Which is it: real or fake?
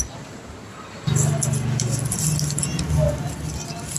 real